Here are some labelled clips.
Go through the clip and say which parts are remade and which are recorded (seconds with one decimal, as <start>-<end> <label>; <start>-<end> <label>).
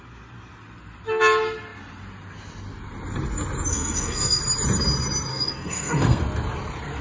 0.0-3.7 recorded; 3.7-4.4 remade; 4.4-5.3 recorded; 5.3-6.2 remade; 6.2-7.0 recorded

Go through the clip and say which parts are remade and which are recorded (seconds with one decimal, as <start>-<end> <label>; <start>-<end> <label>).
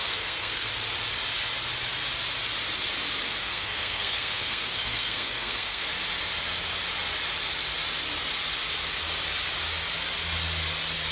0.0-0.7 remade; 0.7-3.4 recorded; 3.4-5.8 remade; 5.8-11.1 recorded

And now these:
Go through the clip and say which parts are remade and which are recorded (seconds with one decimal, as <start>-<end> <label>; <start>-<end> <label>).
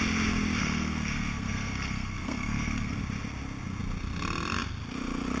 0.0-0.6 recorded; 0.6-3.0 remade; 3.0-5.4 recorded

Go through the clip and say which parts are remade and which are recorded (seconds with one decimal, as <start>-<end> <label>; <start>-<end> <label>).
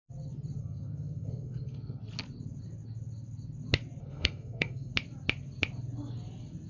0.0-0.6 recorded; 0.6-2.0 remade; 2.0-4.0 recorded; 4.0-4.9 remade; 4.9-6.7 recorded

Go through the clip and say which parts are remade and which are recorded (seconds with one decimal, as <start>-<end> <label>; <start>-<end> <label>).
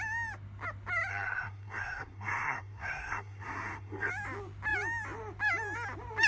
0.0-1.1 recorded; 1.1-4.1 remade; 4.1-6.3 recorded